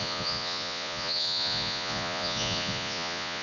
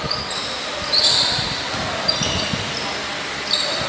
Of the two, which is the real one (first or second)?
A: second